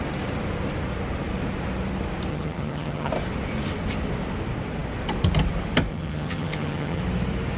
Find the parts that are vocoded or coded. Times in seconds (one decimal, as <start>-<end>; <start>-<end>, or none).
2.3-3.1; 5.9-7.0